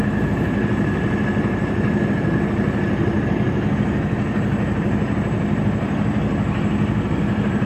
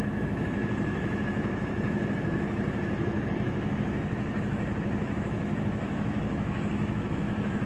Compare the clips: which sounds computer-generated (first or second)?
second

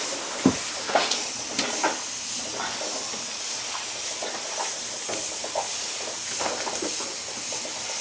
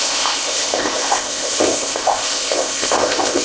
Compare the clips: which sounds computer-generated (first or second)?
second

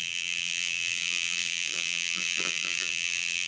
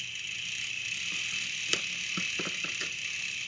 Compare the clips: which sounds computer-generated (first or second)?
first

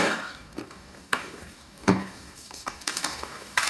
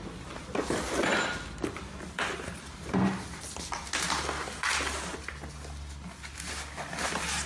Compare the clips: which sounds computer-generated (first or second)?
first